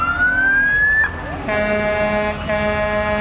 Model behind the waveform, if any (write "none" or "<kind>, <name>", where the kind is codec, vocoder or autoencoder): none